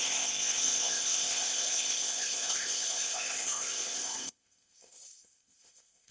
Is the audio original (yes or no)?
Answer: no